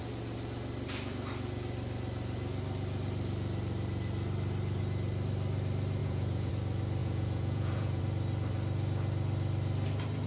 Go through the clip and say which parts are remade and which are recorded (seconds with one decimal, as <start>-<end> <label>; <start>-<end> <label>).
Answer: 0.0-6.0 recorded; 6.0-6.5 remade; 6.5-7.0 recorded; 7.0-8.0 remade; 8.0-10.3 recorded